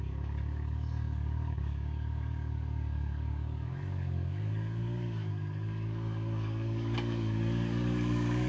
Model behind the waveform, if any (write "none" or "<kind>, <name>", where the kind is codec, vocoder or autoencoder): codec, DAC